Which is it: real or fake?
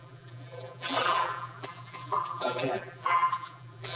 fake